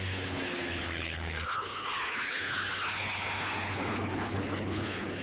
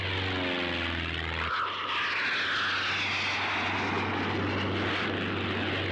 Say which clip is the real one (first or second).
second